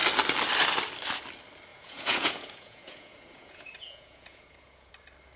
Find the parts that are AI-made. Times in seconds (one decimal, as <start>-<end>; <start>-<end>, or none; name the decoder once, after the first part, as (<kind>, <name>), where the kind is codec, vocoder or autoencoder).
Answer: 1.7-4.9 (vocoder, Vocos)

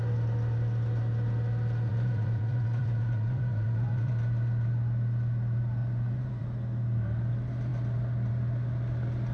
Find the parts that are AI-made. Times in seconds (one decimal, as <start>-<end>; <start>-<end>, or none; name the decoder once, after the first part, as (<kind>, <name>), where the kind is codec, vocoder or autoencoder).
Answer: 1.9-4.1 (vocoder, Vocos); 5.8-6.4

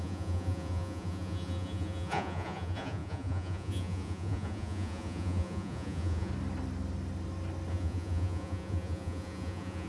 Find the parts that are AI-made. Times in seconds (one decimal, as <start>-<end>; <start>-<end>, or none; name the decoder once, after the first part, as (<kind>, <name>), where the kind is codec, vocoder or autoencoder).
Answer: 0.0-6.3 (vocoder, Vocos); 7.7-9.9

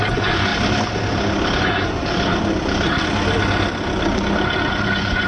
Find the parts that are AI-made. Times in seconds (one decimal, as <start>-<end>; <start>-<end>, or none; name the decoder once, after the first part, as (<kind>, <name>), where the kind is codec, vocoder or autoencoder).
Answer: 0.0-0.5 (vocoder, Vocos); 1.6-2.3; 4.7-5.3

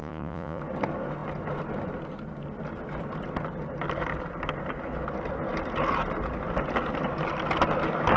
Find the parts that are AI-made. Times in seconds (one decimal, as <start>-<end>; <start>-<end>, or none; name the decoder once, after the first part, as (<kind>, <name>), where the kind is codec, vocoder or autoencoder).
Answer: 0.0-0.6 (vocoder, Vocos)

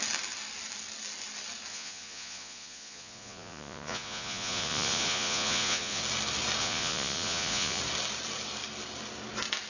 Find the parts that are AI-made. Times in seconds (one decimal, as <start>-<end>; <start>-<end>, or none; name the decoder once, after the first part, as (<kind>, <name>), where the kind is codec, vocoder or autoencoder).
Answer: 1.7-6.0 (vocoder, Vocos); 6.6-7.8

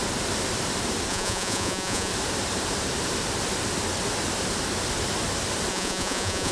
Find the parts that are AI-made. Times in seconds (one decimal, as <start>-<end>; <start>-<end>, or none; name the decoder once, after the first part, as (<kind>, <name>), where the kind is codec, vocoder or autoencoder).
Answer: 1.1-2.1 (vocoder, Vocos); 5.7-6.5

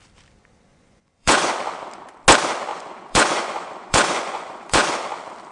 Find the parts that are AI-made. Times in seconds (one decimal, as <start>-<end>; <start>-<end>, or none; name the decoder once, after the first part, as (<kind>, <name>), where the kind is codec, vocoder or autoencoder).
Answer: 0.7-1.5 (vocoder, Vocos); 2.7-4.9